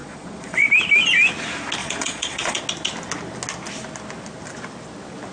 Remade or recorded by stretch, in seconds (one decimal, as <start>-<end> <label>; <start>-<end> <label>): 0.0-0.7 remade; 0.7-1.8 recorded; 1.8-2.6 remade; 2.6-5.3 recorded

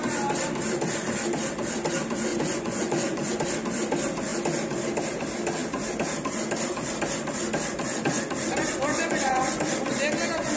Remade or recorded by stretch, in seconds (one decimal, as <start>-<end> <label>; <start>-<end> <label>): 0.0-2.3 recorded; 2.3-3.3 remade; 3.3-8.9 recorded; 8.9-9.6 remade; 9.6-10.6 recorded

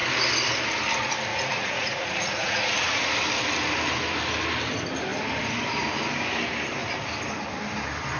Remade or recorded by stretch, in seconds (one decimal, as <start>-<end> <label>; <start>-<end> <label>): 0.0-1.3 recorded; 1.3-3.1 remade; 3.1-8.2 recorded

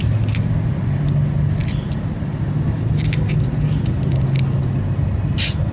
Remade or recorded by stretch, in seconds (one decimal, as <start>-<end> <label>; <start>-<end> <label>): 0.0-5.7 recorded

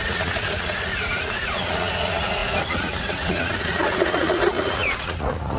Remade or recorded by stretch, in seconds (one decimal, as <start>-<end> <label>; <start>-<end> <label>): 0.0-5.6 remade